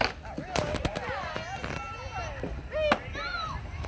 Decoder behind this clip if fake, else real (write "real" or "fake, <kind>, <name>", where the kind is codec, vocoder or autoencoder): real